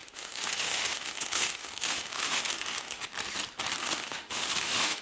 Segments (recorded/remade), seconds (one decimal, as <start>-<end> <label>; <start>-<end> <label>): 0.0-3.0 remade; 3.0-3.8 recorded; 3.8-5.0 remade